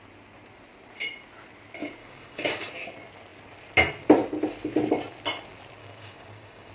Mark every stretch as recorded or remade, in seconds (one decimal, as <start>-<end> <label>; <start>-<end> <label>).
0.0-2.0 recorded; 2.0-2.7 remade; 2.7-5.8 recorded; 5.8-6.7 remade

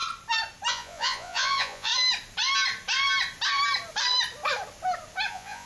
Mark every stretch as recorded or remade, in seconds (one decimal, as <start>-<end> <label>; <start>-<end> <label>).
0.0-0.7 recorded; 0.7-1.9 remade; 1.9-5.3 recorded; 5.3-5.7 remade

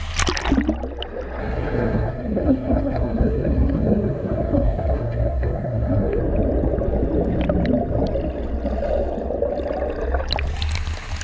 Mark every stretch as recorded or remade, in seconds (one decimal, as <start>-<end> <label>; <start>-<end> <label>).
0.0-1.4 recorded; 1.4-6.2 remade; 6.2-11.2 recorded

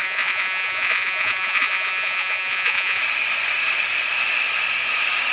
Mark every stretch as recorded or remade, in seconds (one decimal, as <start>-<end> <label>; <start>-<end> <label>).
0.0-3.0 remade; 3.0-5.3 recorded